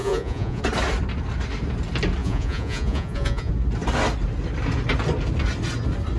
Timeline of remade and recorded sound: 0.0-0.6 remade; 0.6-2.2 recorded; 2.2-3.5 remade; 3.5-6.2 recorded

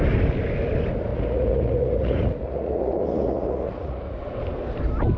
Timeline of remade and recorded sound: 0.0-1.1 recorded; 1.1-4.2 remade; 4.2-5.2 recorded

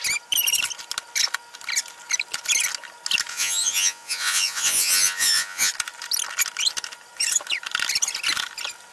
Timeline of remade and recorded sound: 0.0-3.3 recorded; 3.3-5.7 remade; 5.7-8.9 recorded

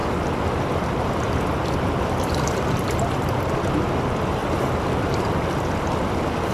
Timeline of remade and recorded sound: 0.0-6.5 recorded